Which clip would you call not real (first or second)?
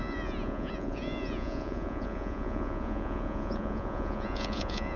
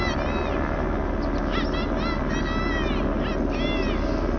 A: first